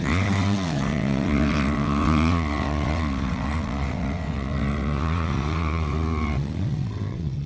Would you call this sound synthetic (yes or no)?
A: yes